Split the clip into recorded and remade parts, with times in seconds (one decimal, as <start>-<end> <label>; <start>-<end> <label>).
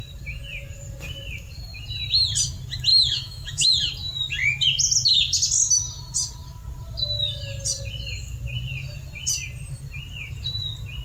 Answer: 0.0-2.9 recorded; 2.9-3.7 remade; 3.7-11.0 recorded